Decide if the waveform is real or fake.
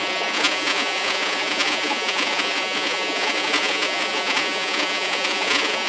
fake